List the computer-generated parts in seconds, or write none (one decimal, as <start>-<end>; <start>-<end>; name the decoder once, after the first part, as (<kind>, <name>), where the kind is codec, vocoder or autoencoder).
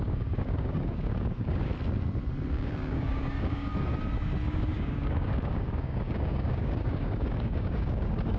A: 0.0-1.7 (codec, DAC); 2.5-3.7; 4.5-8.4